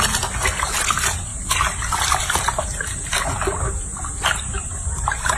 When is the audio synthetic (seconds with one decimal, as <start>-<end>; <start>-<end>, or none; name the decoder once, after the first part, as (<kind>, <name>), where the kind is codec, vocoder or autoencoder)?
none